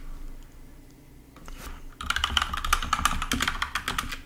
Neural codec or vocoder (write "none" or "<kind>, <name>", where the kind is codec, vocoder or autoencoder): none